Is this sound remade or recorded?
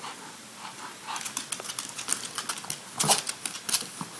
recorded